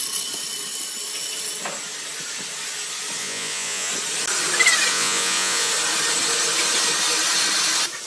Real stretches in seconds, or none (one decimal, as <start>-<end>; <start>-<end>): 0.0-3.2; 3.9-4.9; 5.7-8.1